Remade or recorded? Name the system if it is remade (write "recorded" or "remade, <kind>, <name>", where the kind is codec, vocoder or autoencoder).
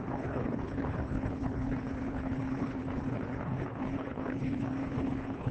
remade, codec, HILCodec